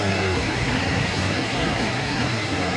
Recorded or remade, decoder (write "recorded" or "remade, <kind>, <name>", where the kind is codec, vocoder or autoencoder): remade, codec, SNAC